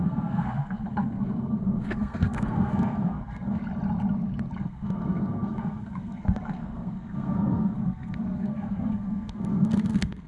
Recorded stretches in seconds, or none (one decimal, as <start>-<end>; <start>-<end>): 3.6-4.6